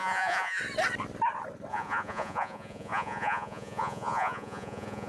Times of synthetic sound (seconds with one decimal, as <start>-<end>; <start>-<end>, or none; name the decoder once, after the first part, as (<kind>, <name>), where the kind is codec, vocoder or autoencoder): 0.0-0.6 (vocoder, Vocos); 1.7-5.1